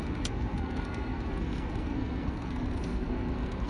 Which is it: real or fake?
fake